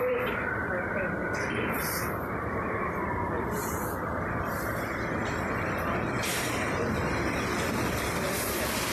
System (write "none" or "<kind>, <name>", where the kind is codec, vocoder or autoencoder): vocoder, BigVGAN v2